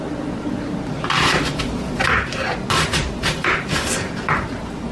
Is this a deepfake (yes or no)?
no